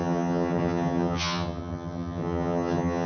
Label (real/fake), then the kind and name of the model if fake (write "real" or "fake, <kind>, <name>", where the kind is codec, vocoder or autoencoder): fake, vocoder, HiFi-GAN